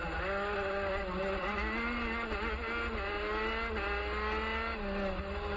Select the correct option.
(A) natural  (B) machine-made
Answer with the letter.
A